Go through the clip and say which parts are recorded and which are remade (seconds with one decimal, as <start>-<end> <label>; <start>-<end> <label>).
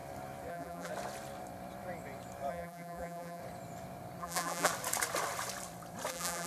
0.0-0.5 recorded; 0.5-0.9 remade; 0.9-2.5 recorded; 2.5-3.4 remade; 3.4-4.2 recorded; 4.2-4.7 remade; 4.7-6.1 recorded; 6.1-6.5 remade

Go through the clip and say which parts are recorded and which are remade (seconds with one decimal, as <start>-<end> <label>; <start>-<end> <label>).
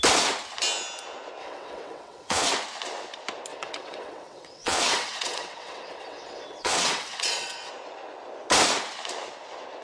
0.0-1.4 recorded; 1.4-2.5 remade; 2.5-3.5 recorded; 3.5-7.7 remade; 7.7-9.8 recorded